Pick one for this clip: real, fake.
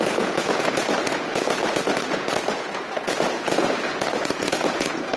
fake